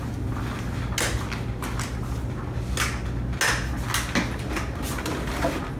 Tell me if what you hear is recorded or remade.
recorded